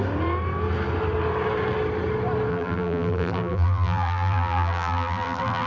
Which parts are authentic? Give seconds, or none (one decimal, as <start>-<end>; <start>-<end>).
0.0-2.5